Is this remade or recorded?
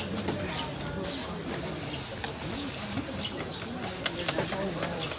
recorded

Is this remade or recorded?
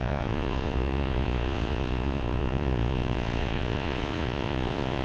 remade